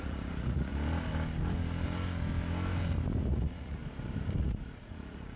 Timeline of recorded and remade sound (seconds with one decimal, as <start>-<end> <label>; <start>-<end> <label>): 0.0-0.7 remade; 0.7-3.2 recorded; 3.2-3.8 remade; 3.8-4.4 recorded; 4.4-5.4 remade